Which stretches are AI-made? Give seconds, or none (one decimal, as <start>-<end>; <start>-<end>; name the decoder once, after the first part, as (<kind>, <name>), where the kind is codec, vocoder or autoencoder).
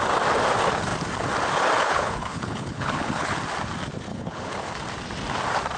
1.8-3.4 (codec, HILCodec); 4.1-4.7